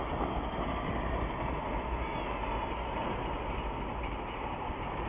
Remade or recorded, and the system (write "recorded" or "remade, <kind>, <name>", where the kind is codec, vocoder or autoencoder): recorded